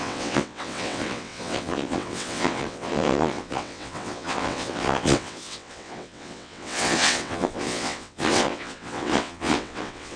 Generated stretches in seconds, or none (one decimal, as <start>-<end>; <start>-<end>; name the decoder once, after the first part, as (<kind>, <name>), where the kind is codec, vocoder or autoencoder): 0.0-10.2 (vocoder, WaveNeXt)